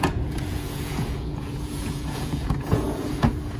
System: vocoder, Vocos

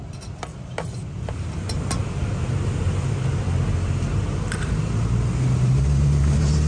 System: none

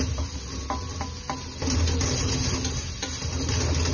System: none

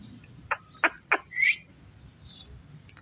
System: none